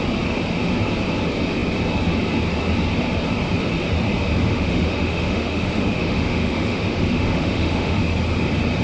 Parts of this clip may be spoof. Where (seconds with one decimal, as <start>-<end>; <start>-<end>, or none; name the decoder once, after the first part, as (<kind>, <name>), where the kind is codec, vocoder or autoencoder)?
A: 4.5-8.0 (autoencoder, DAC-VAE)